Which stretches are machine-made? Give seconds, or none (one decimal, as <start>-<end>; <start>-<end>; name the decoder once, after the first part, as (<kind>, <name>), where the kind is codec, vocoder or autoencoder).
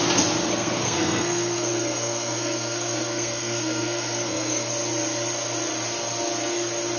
0.5-4.7 (codec, SNAC)